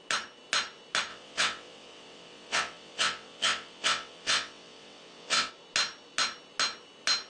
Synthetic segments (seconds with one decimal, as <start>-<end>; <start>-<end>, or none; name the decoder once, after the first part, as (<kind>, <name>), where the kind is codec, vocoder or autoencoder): 1.1-5.5 (vocoder, WaveNeXt)